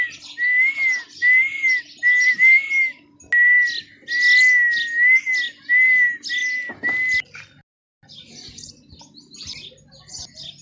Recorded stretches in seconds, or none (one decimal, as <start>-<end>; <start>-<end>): 0.0-10.6